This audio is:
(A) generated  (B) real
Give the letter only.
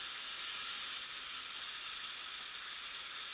B